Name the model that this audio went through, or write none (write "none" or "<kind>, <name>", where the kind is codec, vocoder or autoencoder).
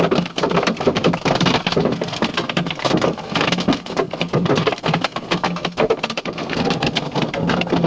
codec, SNAC